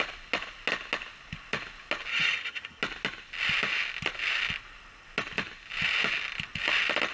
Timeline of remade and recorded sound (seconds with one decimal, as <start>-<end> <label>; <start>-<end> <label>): 0.0-2.1 recorded; 2.1-2.8 remade; 2.8-7.1 recorded

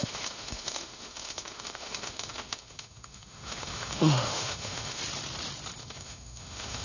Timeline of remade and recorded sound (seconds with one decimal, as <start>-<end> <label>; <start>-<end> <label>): 0.0-5.0 remade; 5.0-5.8 recorded; 5.8-6.8 remade

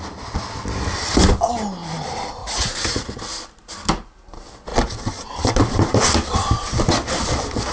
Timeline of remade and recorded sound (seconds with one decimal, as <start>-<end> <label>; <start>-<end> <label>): 0.0-2.4 recorded; 2.4-3.2 remade; 3.2-7.7 recorded

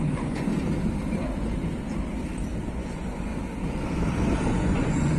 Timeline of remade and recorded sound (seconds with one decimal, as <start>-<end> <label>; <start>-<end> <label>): 0.0-0.5 remade; 0.5-2.7 recorded; 2.7-3.3 remade; 3.3-4.5 recorded; 4.5-5.2 remade

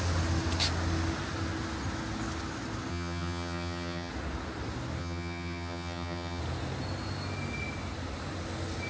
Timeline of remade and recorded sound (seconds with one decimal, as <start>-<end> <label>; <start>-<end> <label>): 0.0-2.9 recorded; 2.9-4.1 remade; 4.1-5.0 recorded; 5.0-6.4 remade; 6.4-8.9 recorded

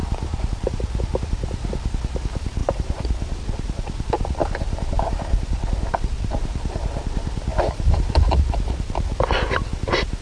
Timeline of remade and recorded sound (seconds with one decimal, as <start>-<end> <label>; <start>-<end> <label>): 0.0-1.0 remade; 1.0-2.6 recorded; 2.6-3.4 remade; 3.4-4.4 recorded; 4.4-5.2 remade; 5.2-7.5 recorded; 7.5-8.2 remade; 8.2-10.2 recorded